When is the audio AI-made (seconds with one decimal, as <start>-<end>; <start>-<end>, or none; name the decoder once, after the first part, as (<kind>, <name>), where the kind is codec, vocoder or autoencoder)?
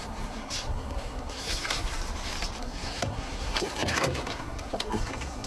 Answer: 0.0-2.0 (codec, SNAC); 2.6-5.5